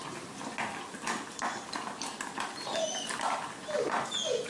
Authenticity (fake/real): real